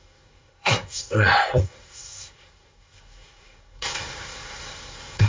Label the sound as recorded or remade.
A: remade